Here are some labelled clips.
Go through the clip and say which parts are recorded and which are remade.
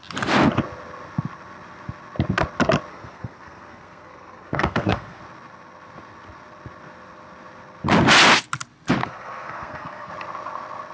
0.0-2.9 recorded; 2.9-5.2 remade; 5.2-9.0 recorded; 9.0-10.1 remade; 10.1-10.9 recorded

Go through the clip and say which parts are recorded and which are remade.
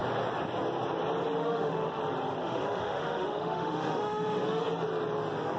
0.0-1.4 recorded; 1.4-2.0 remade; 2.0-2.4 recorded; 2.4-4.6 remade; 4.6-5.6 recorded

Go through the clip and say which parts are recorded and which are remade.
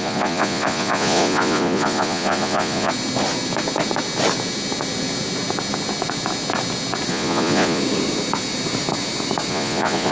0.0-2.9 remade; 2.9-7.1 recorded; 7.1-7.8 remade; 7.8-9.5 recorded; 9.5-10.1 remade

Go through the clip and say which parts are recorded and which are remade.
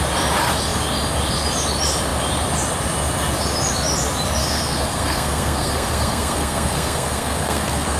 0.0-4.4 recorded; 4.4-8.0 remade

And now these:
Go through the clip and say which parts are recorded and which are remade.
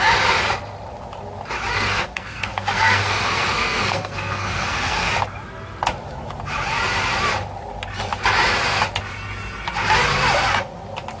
0.0-1.7 recorded; 1.7-5.1 remade; 5.1-11.2 recorded